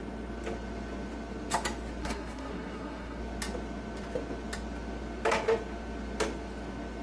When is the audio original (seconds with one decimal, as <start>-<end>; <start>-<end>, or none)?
0.0-2.0; 3.2-7.0